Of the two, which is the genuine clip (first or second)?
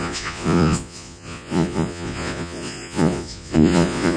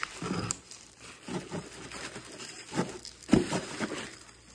second